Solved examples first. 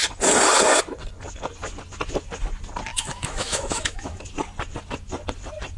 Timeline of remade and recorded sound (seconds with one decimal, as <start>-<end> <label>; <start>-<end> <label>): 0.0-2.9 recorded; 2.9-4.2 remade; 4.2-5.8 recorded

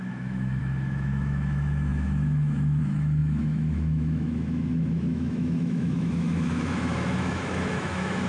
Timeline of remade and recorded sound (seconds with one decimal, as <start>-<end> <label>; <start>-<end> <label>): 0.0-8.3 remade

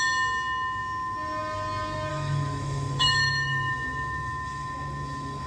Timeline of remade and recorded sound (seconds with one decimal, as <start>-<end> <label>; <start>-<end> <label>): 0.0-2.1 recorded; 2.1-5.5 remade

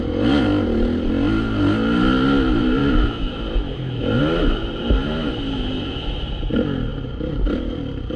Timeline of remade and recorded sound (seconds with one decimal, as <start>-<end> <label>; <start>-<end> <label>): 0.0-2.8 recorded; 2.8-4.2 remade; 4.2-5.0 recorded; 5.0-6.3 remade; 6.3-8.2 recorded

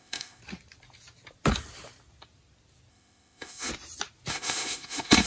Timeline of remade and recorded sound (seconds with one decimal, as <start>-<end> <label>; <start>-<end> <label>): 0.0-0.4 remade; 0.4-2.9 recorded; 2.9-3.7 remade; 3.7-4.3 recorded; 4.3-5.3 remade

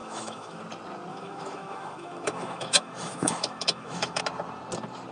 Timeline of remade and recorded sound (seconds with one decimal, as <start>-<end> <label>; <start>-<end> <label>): 0.0-0.6 remade; 0.6-1.1 recorded; 1.1-4.2 remade; 4.2-5.1 recorded